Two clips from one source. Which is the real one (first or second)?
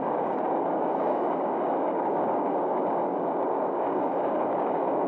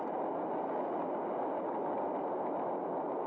second